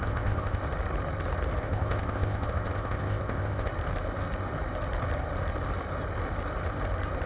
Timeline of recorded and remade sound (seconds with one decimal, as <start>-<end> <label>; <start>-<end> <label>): 0.0-0.6 remade; 0.6-1.6 recorded; 1.6-3.7 remade; 3.7-7.3 recorded